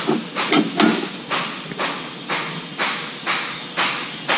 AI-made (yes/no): no